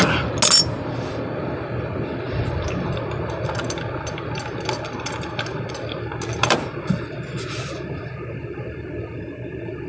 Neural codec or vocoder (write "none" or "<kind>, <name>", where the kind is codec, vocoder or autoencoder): none